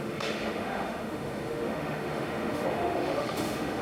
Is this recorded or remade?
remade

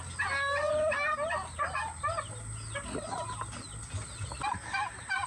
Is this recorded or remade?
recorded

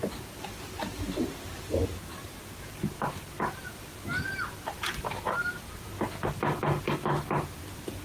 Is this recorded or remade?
recorded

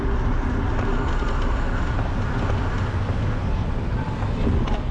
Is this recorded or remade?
recorded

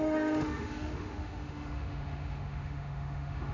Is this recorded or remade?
remade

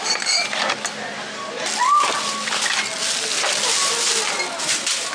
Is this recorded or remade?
recorded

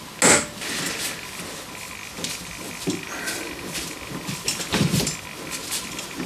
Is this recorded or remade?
recorded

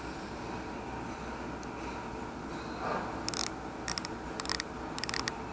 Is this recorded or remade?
recorded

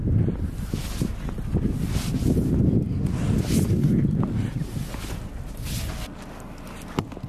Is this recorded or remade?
recorded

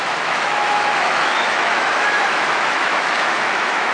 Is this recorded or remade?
remade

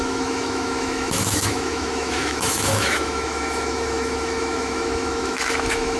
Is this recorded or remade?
remade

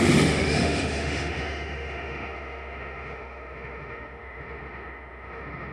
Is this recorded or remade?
remade